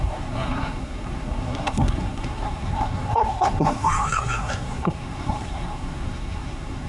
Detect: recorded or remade remade